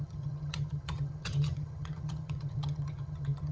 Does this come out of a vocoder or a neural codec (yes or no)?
yes